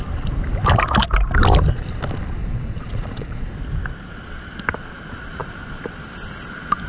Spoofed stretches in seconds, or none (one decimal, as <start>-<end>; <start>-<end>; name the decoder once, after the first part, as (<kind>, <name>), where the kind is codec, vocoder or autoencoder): 2.4-3.5 (vocoder, Vocos)